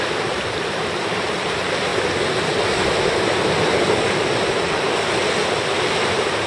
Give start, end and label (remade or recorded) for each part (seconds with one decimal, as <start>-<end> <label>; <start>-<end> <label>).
0.0-1.9 remade; 1.9-5.8 recorded; 5.8-6.5 remade